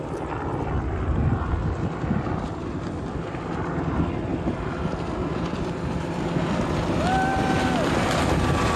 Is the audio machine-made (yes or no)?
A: no